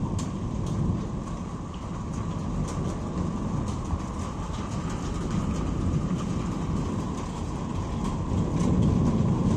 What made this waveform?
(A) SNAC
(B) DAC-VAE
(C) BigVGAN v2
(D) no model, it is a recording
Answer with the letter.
D